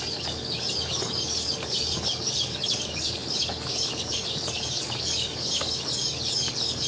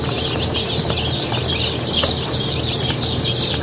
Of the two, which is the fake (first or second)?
first